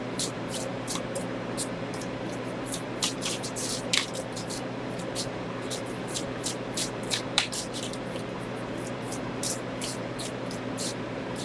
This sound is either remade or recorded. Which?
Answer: remade